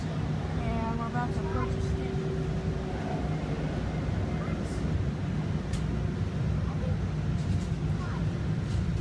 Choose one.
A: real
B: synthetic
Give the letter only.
A